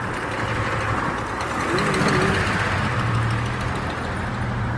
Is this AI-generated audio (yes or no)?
no